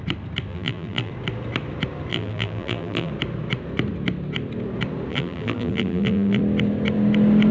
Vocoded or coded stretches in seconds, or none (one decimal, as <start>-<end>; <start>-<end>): 0.5-1.1; 2.1-3.1; 5.1-6.4